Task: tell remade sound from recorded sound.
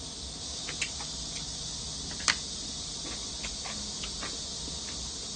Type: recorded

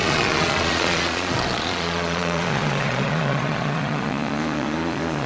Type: remade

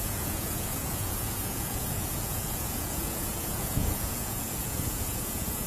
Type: remade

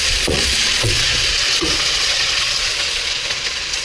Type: remade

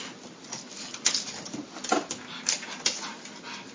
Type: recorded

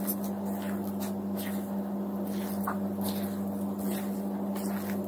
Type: recorded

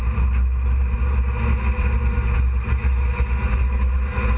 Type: recorded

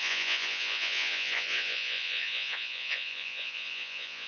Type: remade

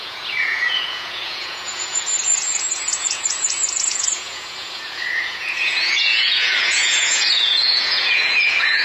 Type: remade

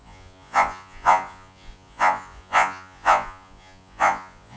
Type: remade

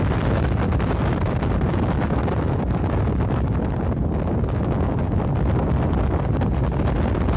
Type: recorded